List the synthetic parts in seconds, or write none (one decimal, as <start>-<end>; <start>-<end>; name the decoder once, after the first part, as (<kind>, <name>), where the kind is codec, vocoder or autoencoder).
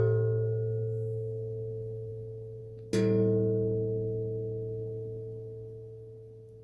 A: none